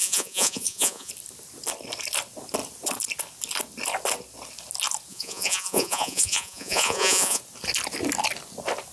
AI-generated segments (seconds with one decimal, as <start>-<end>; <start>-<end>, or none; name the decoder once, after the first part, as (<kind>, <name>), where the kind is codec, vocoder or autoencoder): 0.0-1.1 (vocoder, Vocos); 5.1-7.4